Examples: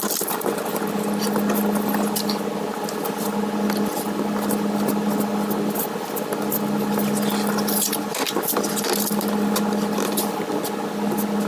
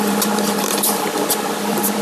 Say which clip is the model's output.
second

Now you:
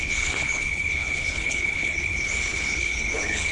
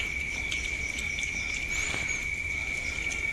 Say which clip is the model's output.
first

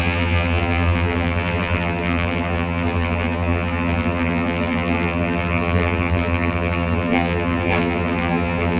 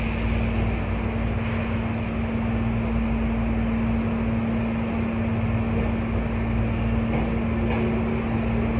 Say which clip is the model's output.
first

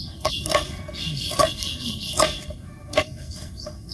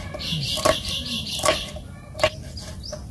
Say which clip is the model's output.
first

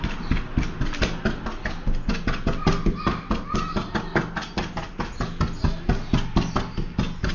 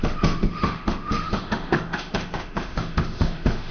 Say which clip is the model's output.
second